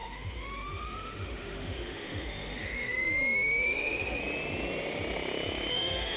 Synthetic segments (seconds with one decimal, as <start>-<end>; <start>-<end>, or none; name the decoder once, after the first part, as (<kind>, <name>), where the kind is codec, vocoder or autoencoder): 0.0-4.2 (autoencoder, DAC-VAE); 5.7-6.2